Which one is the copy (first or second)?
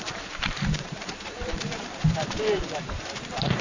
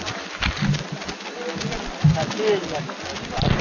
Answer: first